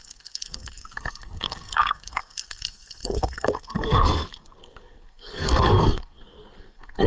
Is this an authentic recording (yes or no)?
no